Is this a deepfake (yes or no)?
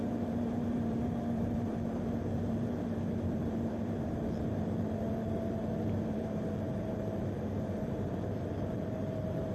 yes